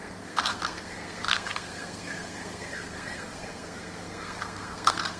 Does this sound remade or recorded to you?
remade